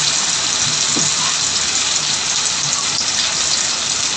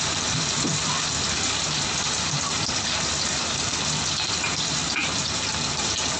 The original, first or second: first